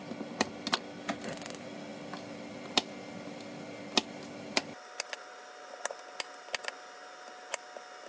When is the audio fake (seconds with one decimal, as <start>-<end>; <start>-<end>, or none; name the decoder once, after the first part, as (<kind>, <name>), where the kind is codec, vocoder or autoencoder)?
none